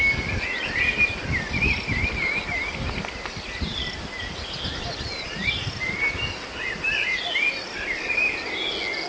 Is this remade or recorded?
recorded